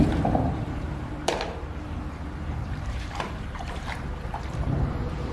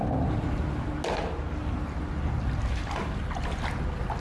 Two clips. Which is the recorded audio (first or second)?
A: second